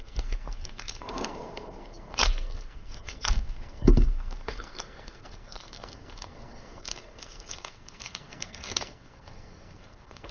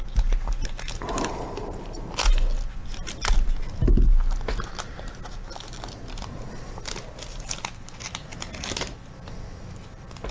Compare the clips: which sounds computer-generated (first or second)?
first